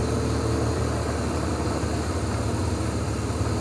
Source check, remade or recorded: recorded